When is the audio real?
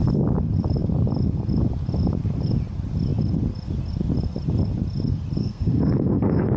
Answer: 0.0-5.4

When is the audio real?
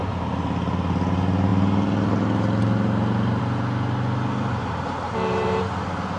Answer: 0.0-4.6; 5.6-6.2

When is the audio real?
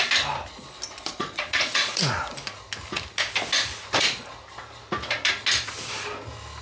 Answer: 0.0-1.0; 2.0-6.6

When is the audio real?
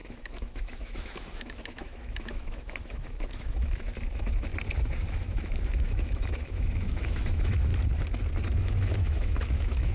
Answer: 4.5-5.1; 7.7-8.6